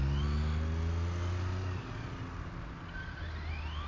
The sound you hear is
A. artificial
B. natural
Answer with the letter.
B